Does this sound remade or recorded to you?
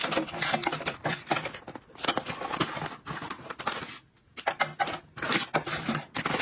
recorded